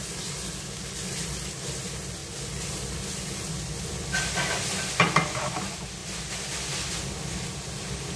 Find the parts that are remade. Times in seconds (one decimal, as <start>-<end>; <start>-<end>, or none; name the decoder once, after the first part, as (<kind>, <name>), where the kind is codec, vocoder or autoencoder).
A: none